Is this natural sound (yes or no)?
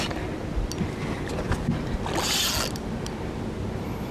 yes